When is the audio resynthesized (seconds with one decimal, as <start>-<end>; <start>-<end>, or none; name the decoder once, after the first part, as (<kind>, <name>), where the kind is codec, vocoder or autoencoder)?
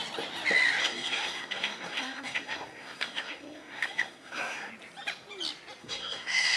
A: 0.8-4.7 (codec, SNAC); 5.8-6.6